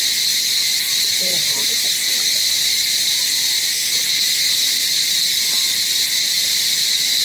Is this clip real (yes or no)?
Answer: yes